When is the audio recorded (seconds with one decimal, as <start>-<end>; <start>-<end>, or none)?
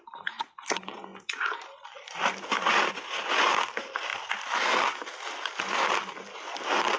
0.0-7.0